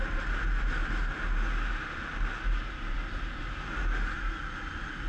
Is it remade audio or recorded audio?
recorded